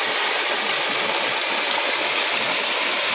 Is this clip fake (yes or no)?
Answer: no